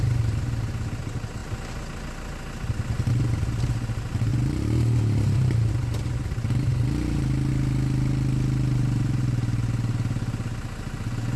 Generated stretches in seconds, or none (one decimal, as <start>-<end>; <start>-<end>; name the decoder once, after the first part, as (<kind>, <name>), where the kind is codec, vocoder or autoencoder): none